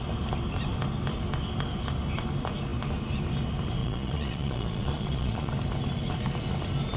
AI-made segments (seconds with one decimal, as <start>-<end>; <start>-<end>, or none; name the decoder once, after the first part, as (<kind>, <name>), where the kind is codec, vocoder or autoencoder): 3.8-5.5 (vocoder, Vocos)